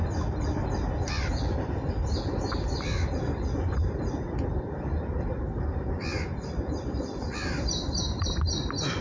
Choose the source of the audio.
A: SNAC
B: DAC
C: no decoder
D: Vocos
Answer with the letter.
C